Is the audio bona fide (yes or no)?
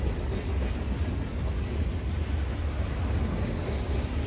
yes